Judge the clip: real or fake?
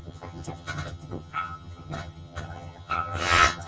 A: fake